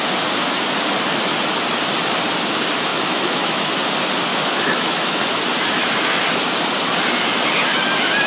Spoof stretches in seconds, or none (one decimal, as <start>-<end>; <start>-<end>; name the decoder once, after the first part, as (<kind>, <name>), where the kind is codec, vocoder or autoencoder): 2.9-3.7 (autoencoder, DAC-VAE); 4.3-5.2